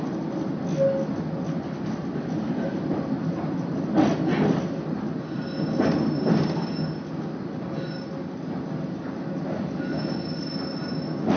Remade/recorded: recorded